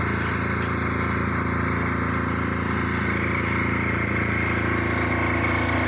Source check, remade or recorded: recorded